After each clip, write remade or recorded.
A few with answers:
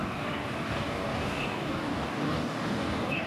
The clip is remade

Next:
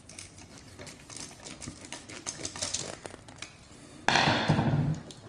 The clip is recorded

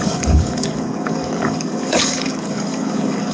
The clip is remade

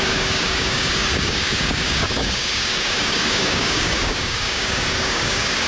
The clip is remade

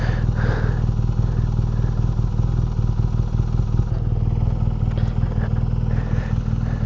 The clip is recorded